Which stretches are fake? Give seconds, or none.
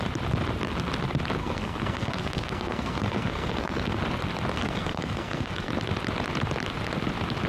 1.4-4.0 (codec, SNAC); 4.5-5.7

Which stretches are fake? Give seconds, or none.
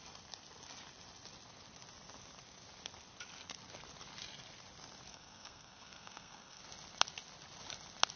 5.1-6.6 (codec, SNAC)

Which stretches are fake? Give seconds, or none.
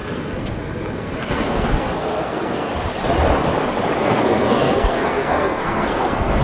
0.0-2.7 (codec, SNAC); 4.0-6.4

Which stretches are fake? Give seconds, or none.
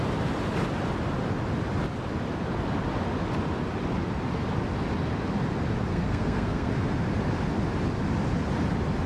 5.9-6.7 (codec, SNAC)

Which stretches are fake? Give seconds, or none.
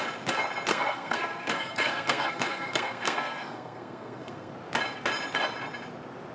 0.7-4.5 (codec, SNAC)